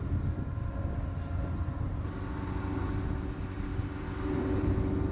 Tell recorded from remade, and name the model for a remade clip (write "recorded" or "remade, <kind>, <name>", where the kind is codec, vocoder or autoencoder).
recorded